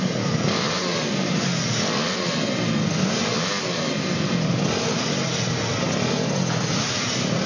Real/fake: real